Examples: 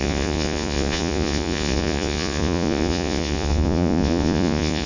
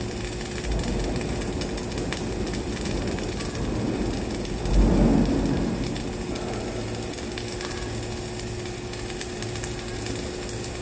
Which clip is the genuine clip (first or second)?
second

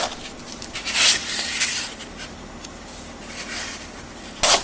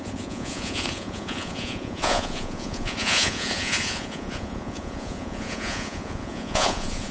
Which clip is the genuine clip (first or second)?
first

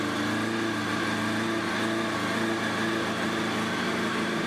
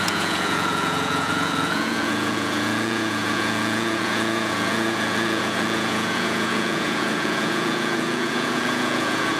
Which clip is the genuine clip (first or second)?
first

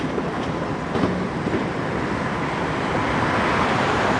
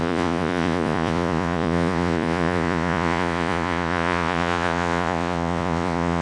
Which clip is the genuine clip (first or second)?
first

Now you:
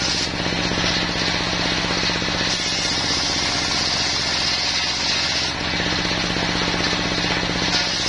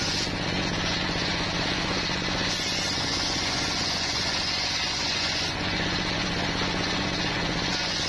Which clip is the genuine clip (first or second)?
first